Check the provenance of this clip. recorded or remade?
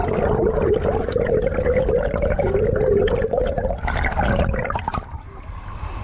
recorded